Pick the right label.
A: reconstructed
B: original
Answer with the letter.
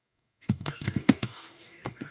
A